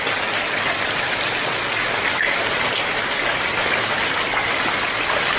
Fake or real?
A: real